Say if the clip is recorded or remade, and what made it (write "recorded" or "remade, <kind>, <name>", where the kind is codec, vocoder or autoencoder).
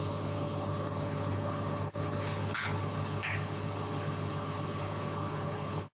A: remade, codec, HILCodec